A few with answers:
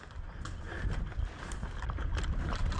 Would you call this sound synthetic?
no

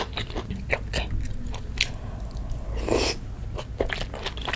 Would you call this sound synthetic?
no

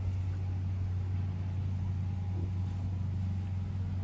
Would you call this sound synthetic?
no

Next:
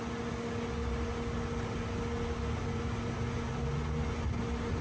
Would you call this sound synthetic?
no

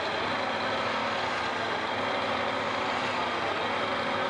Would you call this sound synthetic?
no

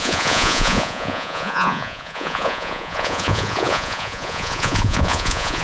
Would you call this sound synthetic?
yes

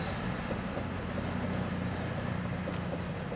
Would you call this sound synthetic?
no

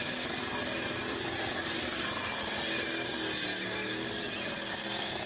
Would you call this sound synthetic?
no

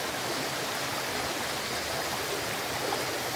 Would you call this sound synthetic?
no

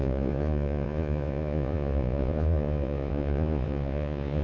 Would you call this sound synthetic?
yes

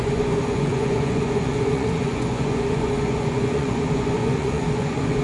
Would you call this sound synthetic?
yes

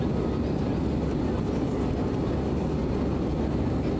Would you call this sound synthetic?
no